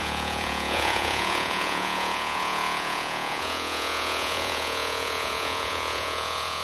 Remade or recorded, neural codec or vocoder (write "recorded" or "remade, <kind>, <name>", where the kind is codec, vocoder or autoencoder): remade, vocoder, Vocos